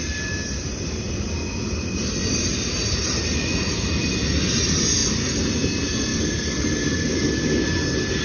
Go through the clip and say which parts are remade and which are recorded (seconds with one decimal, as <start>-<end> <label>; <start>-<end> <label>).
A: 0.0-8.2 recorded